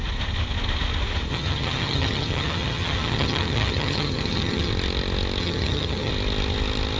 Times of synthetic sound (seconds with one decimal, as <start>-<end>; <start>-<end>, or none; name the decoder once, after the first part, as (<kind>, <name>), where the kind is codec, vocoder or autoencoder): 1.3-4.7 (vocoder, HiFi-GAN); 5.4-6.1